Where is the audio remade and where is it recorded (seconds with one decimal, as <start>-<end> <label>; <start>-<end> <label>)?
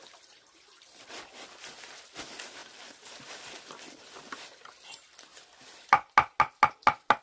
0.0-7.2 recorded